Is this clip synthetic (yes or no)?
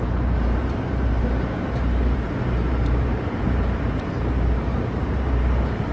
yes